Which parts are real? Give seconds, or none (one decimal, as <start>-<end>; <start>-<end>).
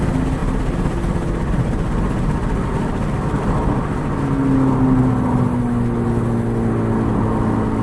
0.0-7.8